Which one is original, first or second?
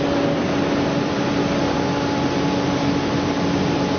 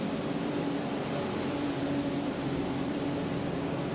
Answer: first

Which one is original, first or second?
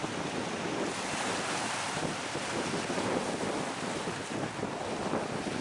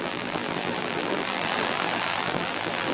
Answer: first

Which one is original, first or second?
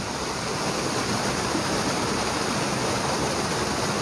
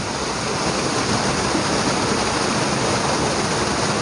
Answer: second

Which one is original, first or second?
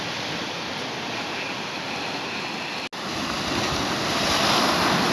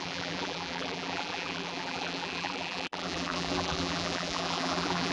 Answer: first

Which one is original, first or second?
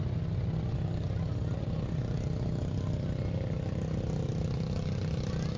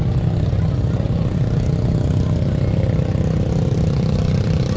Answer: first